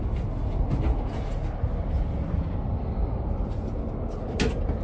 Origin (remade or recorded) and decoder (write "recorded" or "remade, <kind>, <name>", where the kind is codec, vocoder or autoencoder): recorded